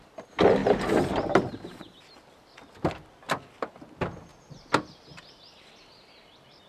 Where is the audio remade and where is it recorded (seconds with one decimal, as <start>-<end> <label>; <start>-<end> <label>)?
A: 0.0-6.7 recorded